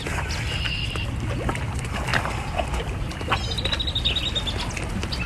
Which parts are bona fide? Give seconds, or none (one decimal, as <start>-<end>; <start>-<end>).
0.0-5.3